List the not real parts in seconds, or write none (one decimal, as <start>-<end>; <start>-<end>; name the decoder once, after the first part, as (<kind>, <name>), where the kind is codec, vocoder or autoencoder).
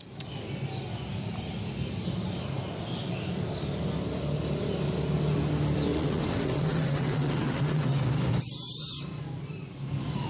5.9-8.0 (vocoder, WaveNeXt)